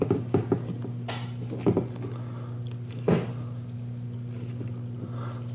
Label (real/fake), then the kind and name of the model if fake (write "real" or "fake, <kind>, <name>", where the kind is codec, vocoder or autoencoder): real